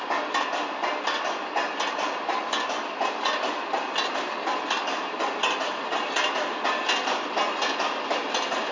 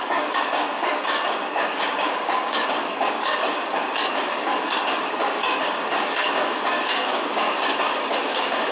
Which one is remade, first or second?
second